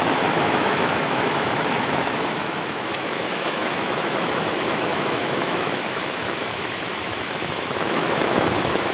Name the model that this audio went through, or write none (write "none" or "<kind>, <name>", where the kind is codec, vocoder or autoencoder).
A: autoencoder, DAC-VAE